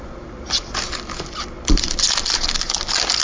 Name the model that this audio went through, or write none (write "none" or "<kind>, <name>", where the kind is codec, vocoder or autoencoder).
none